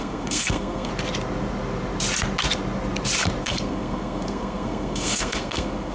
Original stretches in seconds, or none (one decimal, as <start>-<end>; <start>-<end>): 0.9-3.4